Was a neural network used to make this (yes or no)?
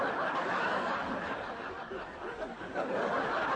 yes